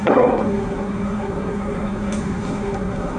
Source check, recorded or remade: remade